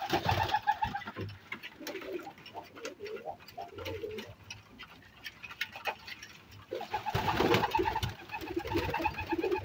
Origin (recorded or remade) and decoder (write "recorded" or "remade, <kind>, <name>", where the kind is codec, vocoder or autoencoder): recorded